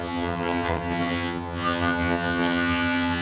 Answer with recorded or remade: remade